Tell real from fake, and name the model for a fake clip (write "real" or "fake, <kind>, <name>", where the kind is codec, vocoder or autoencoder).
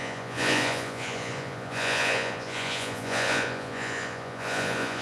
fake, vocoder, Vocos